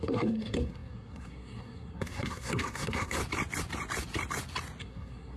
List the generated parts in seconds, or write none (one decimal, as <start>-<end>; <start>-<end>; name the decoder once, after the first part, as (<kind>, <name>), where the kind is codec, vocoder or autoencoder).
0.0-3.2 (codec, SNAC); 4.8-5.4